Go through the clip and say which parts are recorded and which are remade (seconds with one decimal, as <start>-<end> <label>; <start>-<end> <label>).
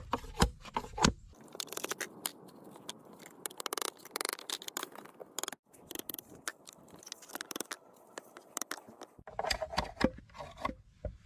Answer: 0.0-11.3 recorded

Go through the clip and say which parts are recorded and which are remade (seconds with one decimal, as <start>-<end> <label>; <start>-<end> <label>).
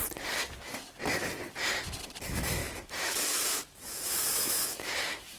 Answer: 0.0-2.6 recorded; 2.6-5.4 remade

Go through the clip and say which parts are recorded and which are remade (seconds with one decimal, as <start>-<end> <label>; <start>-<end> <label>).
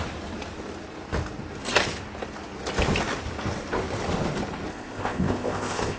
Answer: 0.0-4.7 recorded; 4.7-6.0 remade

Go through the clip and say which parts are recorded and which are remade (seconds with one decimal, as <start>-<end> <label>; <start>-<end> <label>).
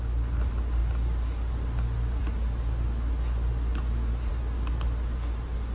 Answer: 0.0-5.7 recorded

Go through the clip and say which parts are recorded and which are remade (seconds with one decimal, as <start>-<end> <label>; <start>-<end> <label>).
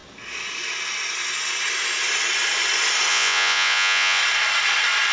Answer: 0.0-3.1 recorded; 3.1-4.2 remade; 4.2-5.1 recorded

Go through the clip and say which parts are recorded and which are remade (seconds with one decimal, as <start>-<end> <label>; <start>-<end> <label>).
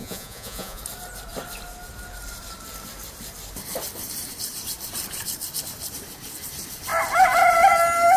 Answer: 0.0-0.8 remade; 0.8-8.2 recorded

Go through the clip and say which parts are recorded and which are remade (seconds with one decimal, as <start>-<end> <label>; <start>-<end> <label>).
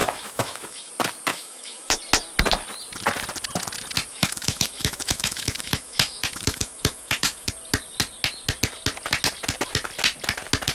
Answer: 0.0-0.9 remade; 0.9-1.3 recorded; 1.3-2.0 remade; 2.0-4.1 recorded; 4.1-7.5 remade; 7.5-10.7 recorded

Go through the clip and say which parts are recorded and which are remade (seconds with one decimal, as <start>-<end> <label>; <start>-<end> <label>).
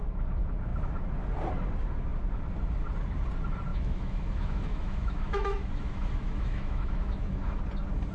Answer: 0.0-3.7 recorded; 3.7-7.6 remade; 7.6-8.1 recorded